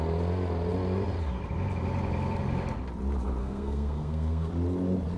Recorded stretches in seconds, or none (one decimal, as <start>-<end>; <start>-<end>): 0.0-3.4; 4.5-5.2